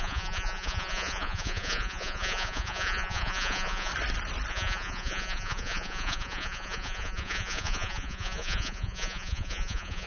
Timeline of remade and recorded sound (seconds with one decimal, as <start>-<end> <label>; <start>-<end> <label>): 0.0-3.9 remade; 3.9-4.5 recorded; 4.5-10.1 remade